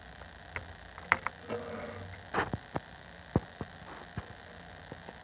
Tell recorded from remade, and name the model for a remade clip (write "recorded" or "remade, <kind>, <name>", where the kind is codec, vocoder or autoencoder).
recorded